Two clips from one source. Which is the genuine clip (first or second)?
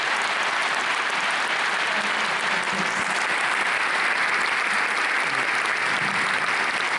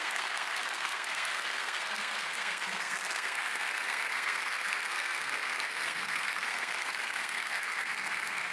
first